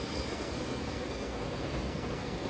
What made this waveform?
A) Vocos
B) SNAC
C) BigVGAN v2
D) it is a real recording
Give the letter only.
B